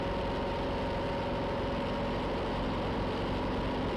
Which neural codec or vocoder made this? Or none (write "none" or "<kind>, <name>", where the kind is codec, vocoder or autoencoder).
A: none